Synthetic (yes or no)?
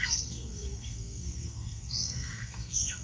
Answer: yes